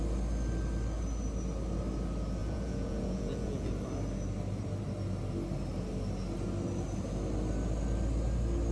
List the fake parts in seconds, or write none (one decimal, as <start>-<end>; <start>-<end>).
2.4-3.7